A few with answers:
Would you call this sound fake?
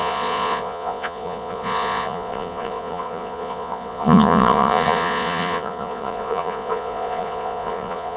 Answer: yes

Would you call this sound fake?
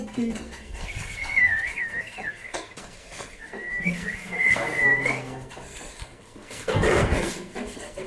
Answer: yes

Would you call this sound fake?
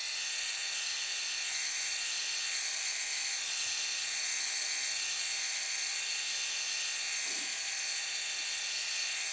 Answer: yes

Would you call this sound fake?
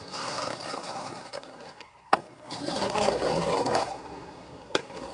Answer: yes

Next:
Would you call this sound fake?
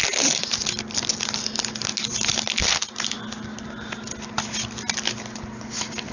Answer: no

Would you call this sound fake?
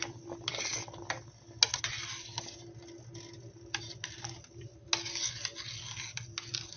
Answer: no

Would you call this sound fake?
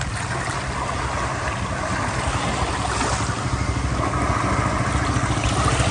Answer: no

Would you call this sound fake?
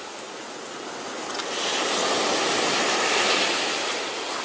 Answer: no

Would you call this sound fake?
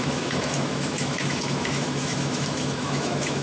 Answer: yes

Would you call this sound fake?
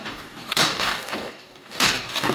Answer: yes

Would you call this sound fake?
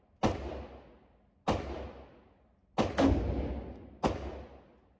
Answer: no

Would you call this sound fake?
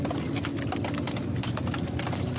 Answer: no